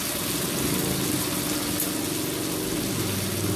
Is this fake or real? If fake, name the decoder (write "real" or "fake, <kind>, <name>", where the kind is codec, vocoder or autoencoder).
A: real